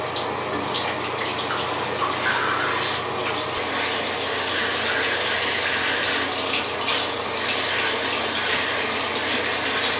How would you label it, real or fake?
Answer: real